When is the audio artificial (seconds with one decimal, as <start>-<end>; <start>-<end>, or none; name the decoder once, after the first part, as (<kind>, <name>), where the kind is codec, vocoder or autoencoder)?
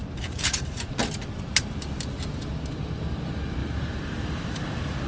0.0-0.8 (vocoder, BigVGAN v2); 1.5-2.0; 3.6-4.6